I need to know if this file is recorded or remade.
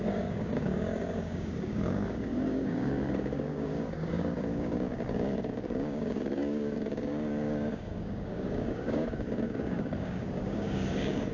remade